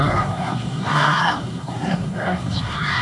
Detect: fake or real fake